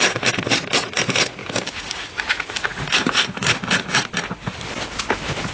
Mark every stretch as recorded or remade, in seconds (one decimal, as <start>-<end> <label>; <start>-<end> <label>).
0.0-1.4 recorded; 1.4-2.1 remade; 2.1-5.5 recorded